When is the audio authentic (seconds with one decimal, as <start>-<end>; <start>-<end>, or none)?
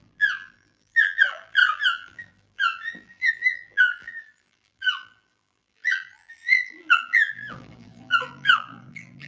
none